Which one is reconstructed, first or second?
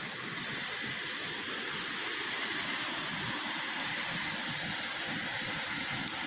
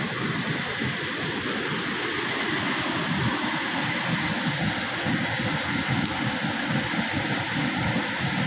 first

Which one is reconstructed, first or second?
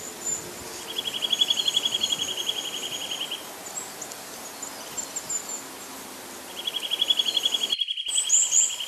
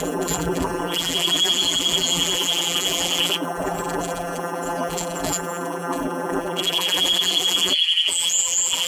second